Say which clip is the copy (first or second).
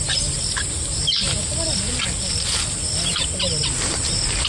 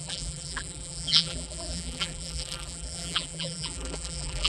second